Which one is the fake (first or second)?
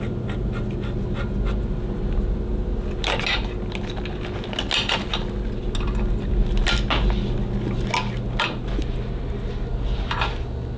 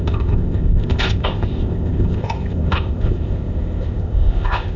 second